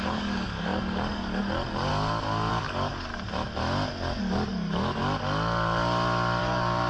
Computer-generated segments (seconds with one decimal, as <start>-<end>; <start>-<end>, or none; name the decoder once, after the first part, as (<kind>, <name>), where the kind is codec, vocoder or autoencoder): 0.0-1.9 (codec, DAC); 2.5-3.1; 4.2-5.0; 6.4-6.9